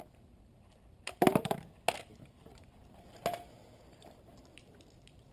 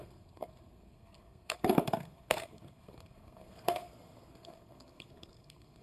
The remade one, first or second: second